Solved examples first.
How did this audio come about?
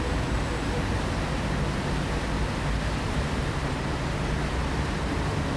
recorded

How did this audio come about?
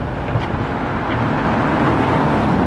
recorded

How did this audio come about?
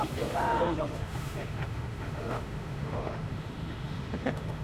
remade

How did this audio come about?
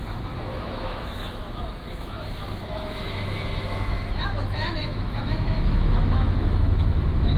remade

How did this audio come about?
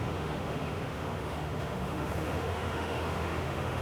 remade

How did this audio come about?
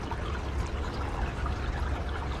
recorded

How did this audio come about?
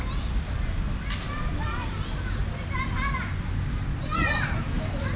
recorded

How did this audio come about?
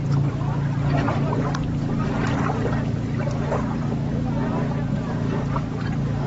recorded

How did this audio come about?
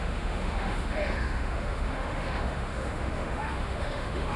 remade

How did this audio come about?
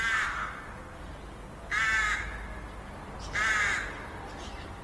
recorded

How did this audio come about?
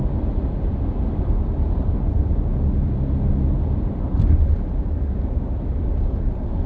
recorded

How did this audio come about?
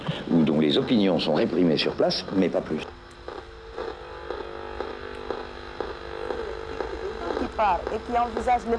recorded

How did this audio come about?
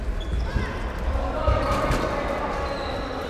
recorded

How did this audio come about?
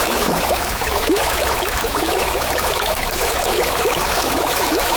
remade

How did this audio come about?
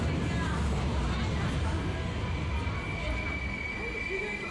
recorded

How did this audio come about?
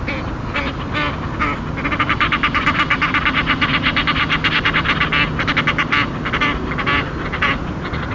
recorded